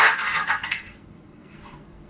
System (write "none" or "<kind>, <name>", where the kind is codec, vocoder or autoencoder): codec, SNAC